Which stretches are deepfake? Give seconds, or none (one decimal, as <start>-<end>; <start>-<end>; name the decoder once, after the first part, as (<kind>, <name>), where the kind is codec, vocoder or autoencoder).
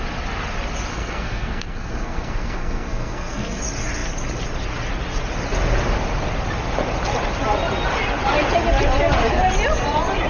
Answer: 0.9-3.6 (codec, SNAC)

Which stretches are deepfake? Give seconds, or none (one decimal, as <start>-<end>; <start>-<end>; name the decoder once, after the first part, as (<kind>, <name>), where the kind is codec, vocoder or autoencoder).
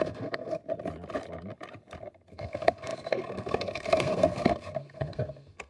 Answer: 0.0-0.6 (codec, SNAC); 2.3-5.7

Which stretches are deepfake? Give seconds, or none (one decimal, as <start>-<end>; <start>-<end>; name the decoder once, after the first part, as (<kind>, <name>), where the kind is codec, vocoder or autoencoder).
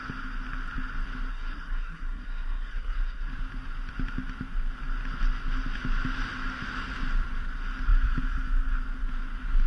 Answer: 1.3-3.3 (codec, SNAC)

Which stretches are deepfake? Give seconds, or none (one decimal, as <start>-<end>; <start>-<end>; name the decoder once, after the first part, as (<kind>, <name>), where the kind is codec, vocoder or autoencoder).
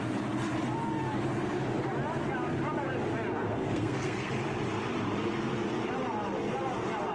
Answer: 3.4-4.3 (codec, SNAC)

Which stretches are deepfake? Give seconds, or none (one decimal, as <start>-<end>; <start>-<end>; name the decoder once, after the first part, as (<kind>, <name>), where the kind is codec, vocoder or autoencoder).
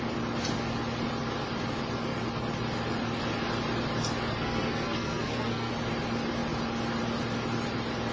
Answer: 4.3-5.7 (codec, SNAC)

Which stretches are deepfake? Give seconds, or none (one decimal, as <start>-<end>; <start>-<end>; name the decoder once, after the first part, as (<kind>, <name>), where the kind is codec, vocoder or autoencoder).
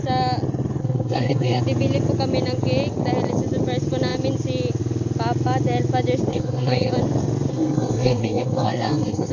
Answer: 0.8-1.6 (codec, SNAC); 6.3-6.9; 7.5-9.3